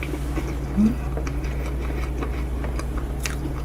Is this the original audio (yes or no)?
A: yes